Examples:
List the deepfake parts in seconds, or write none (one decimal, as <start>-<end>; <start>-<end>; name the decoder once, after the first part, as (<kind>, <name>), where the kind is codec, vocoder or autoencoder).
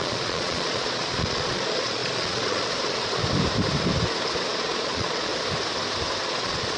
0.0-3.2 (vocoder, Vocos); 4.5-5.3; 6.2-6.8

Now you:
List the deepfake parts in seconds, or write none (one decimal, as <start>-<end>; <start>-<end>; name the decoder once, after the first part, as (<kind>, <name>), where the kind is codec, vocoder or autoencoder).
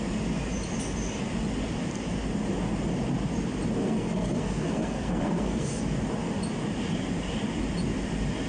3.8-5.8 (codec, SNAC)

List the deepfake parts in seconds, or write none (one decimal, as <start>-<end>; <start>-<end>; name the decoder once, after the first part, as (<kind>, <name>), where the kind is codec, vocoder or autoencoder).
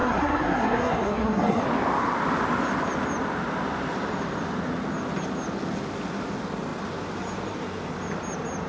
0.0-1.6 (codec, SNAC)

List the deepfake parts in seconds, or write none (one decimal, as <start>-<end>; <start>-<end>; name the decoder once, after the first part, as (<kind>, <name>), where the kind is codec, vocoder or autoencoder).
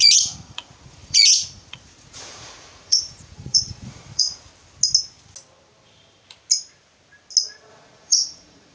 0.0-4.5 (vocoder, Vocos); 7.7-8.7